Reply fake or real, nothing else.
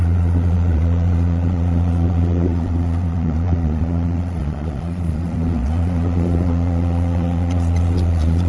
fake